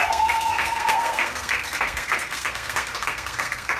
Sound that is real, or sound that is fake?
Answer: fake